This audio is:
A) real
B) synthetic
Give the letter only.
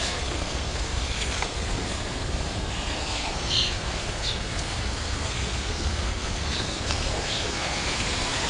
B